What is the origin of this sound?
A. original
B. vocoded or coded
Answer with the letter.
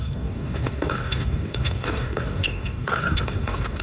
B